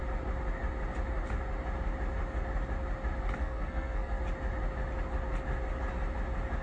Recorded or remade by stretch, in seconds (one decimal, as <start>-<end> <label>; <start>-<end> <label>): 0.0-3.4 recorded; 3.4-4.2 remade; 4.2-6.6 recorded